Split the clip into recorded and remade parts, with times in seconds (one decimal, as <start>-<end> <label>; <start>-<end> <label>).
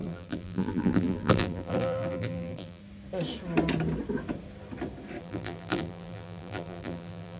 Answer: 0.0-2.8 remade; 2.8-5.2 recorded; 5.2-7.4 remade